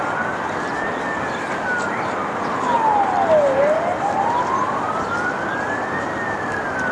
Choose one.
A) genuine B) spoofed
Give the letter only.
A